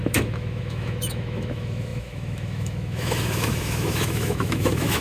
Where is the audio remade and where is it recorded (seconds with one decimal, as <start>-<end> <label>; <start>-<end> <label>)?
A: 0.0-5.0 remade

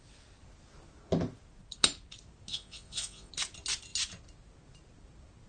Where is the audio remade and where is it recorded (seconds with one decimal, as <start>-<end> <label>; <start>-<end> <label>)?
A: 0.0-2.5 recorded; 2.5-3.3 remade; 3.3-5.5 recorded

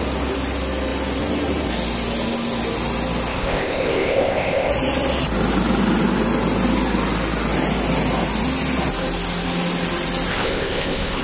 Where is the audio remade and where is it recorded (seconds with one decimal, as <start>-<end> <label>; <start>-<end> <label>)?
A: 0.0-3.3 recorded; 3.3-4.7 remade; 4.7-10.3 recorded; 10.3-11.2 remade

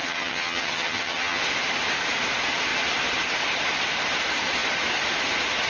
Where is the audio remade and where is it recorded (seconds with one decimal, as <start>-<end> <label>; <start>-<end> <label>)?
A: 0.0-1.4 remade; 1.4-5.7 recorded

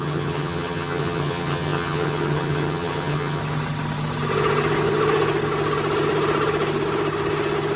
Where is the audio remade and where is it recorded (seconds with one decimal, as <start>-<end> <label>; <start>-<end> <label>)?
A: 0.0-3.4 remade; 3.4-7.8 recorded

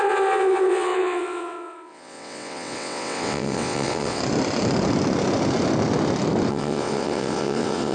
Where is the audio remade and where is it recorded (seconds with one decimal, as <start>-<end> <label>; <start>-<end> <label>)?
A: 0.0-4.2 remade; 4.2-6.5 recorded; 6.5-7.9 remade